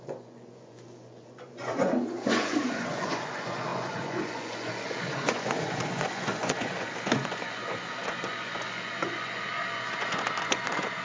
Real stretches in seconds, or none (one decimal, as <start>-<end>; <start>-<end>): none

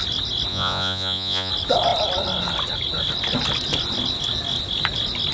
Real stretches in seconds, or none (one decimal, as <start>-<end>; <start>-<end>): 0.0-0.5; 1.5-5.3

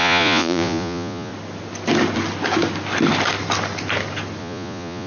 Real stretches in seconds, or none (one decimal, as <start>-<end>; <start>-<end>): 1.3-4.4

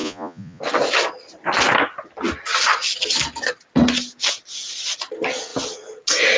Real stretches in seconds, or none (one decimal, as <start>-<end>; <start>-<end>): 0.6-6.4